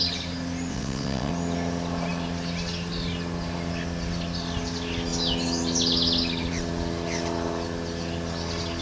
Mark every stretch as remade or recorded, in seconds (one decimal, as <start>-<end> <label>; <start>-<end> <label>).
0.0-0.7 recorded; 0.7-1.3 remade; 1.3-8.8 recorded